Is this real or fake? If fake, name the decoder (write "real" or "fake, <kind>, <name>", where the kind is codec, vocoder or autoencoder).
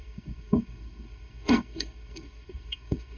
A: fake, codec, SNAC